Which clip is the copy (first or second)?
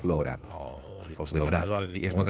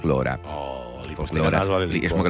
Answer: first